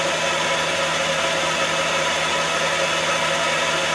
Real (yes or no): yes